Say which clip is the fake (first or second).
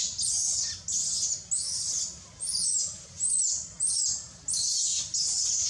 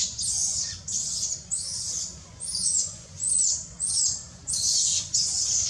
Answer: second